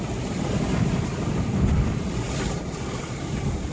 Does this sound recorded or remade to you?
recorded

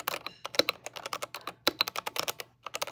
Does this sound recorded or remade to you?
recorded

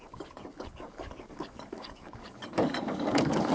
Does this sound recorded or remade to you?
remade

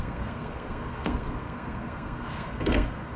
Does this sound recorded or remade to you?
remade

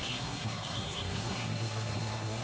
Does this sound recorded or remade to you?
remade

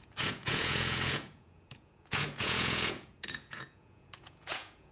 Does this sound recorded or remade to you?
remade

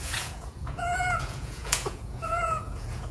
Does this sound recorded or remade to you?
remade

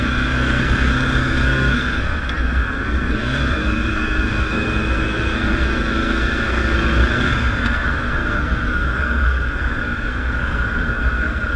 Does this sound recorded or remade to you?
remade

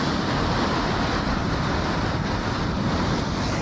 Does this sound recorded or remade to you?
recorded